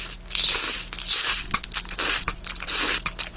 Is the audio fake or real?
real